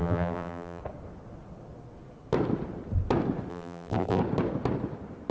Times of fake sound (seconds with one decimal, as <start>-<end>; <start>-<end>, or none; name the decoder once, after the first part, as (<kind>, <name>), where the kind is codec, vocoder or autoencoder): 0.0-0.8 (vocoder, BigVGAN v2); 3.5-4.2